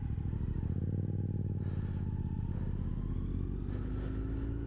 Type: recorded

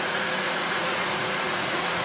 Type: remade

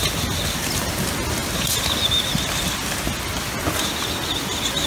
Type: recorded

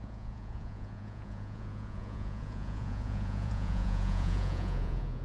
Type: remade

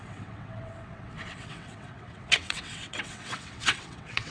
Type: remade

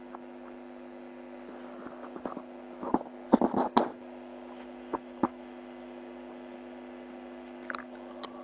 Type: recorded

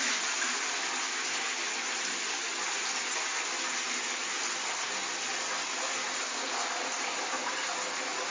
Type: recorded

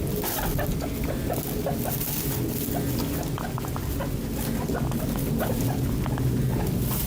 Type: recorded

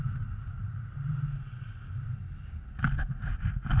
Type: recorded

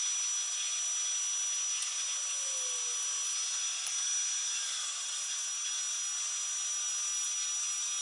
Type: recorded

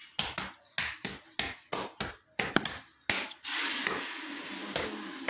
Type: recorded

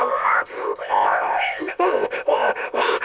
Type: remade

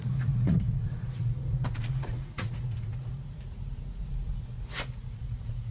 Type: remade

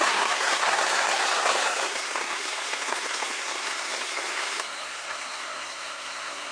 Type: remade